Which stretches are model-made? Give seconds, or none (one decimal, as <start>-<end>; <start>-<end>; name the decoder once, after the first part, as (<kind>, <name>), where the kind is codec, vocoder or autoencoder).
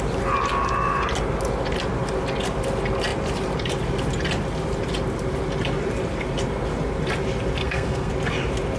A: 7.6-8.1 (codec, SNAC)